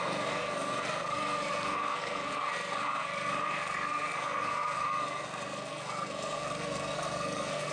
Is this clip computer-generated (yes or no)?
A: yes